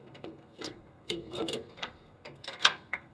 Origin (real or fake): fake